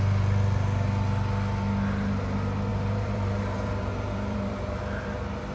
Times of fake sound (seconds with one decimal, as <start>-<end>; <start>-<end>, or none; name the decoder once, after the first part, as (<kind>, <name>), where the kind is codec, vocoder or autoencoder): 2.7-4.8 (vocoder, BigVGAN v2)